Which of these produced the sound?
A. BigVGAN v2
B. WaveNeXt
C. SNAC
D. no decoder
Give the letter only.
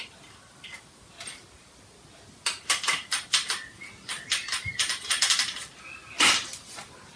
D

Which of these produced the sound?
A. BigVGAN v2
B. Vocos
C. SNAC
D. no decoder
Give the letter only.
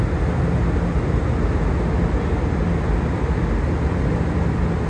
D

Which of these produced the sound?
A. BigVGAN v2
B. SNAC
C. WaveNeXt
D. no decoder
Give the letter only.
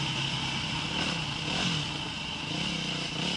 D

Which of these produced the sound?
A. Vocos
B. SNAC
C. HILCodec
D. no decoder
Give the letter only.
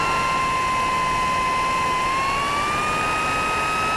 D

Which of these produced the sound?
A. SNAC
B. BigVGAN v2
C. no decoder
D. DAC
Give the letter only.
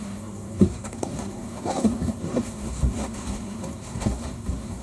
A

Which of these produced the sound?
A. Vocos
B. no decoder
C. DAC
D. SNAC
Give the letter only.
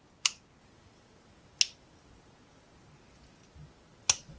B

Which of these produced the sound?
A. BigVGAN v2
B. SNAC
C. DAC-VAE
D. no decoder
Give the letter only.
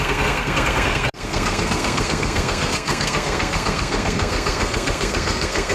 B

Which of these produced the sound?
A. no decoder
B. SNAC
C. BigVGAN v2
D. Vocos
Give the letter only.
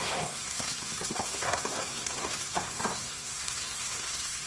B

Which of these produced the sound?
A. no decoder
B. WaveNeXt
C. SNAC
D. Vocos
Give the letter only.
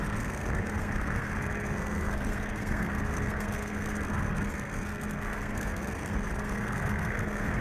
C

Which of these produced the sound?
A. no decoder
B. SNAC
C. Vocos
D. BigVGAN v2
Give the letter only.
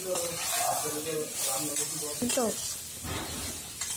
A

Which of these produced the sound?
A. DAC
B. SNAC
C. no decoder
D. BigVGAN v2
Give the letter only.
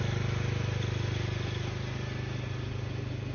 C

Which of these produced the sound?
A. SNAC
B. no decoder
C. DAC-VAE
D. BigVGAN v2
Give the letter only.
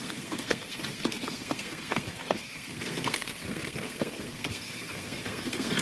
A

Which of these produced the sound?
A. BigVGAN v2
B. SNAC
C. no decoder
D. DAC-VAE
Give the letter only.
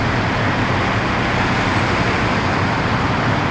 C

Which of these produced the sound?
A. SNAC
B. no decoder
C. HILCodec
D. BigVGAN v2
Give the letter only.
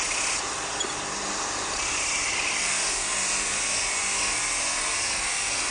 B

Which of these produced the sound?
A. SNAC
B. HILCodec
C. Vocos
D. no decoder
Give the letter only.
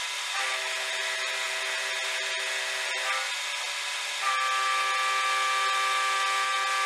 D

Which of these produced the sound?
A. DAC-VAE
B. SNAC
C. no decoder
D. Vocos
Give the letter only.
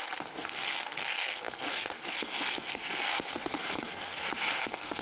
B